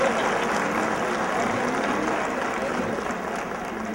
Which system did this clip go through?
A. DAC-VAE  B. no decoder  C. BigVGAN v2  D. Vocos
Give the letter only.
B